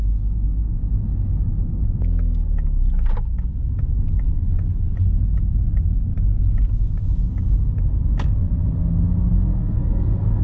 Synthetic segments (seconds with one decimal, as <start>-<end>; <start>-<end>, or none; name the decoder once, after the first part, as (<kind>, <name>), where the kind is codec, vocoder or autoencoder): 9.5-10.4 (codec, SNAC)